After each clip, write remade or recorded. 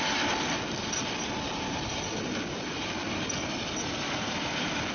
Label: recorded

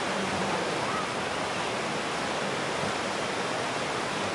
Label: recorded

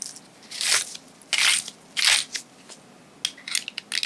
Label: recorded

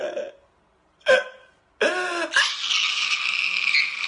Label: recorded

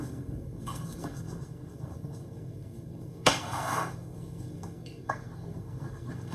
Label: remade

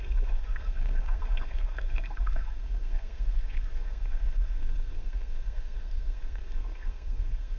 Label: remade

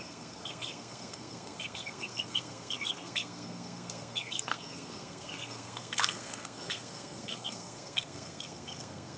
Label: remade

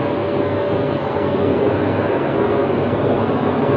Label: remade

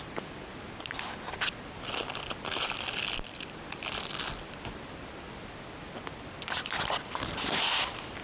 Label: recorded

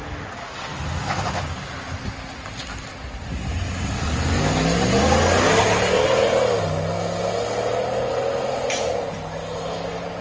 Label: recorded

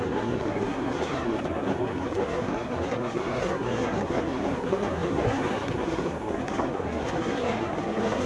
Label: remade